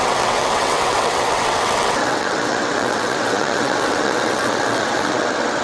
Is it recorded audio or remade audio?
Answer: remade